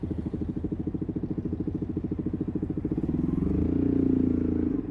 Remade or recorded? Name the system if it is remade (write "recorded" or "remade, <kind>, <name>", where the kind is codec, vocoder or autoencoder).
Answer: recorded